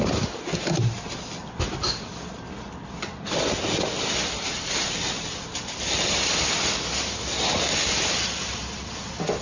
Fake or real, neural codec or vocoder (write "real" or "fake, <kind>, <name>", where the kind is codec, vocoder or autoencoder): real